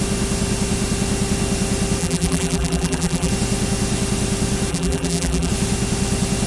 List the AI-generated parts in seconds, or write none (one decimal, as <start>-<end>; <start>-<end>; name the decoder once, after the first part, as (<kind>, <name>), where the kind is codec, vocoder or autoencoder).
2.0-3.3 (vocoder, BigVGAN v2); 4.7-5.5